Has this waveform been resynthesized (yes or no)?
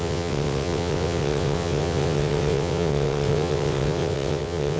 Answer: yes